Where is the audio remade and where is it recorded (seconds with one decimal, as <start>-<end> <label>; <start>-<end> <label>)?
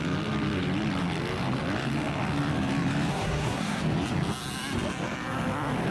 0.0-3.1 recorded; 3.1-3.8 remade; 3.8-5.9 recorded